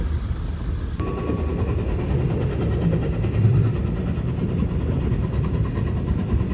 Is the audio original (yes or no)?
yes